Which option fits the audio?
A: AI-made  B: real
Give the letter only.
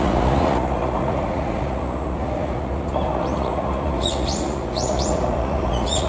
A